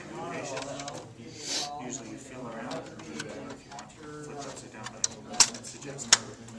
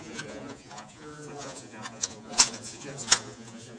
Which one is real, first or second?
first